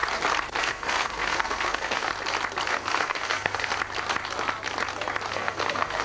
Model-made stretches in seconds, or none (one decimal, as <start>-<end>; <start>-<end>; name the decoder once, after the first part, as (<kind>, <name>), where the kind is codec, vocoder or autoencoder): 0.6-2.1 (codec, SNAC); 2.7-3.7; 5.3-6.0